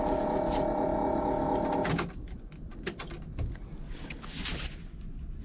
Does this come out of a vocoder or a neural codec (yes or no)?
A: no